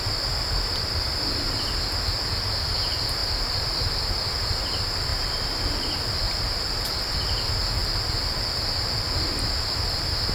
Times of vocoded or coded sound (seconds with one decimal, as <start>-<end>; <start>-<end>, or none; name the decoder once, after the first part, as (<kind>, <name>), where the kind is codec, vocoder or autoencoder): 3.2-4.0 (vocoder, BigVGAN v2); 5.1-7.0